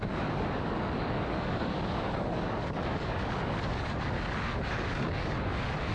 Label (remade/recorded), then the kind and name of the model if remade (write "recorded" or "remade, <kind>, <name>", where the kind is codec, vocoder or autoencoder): remade, codec, DAC